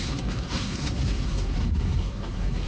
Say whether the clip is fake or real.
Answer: fake